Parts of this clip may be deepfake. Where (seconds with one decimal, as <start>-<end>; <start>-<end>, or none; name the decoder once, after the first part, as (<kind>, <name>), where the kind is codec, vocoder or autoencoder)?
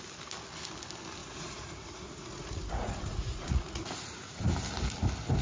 1.2-4.4 (vocoder, Vocos)